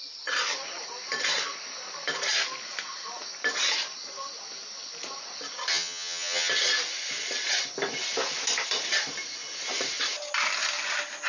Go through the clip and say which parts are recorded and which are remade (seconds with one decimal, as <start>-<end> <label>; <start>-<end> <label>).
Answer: 0.0-5.7 recorded; 5.7-6.5 remade; 6.5-11.3 recorded